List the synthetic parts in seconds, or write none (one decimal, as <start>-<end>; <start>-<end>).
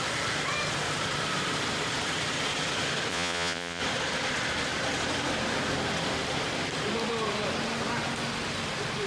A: 3.1-3.8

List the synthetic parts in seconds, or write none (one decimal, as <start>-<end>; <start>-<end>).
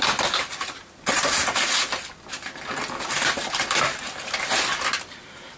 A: 0.0-1.4; 3.0-5.6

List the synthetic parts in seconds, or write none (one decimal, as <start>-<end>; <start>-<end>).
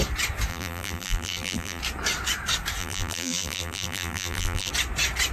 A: 0.5-1.8; 2.8-4.7